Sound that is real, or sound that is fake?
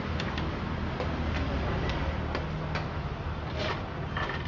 real